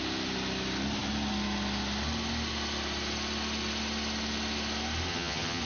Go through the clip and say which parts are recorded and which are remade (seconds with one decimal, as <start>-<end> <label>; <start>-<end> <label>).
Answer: 0.0-5.1 recorded; 5.1-5.6 remade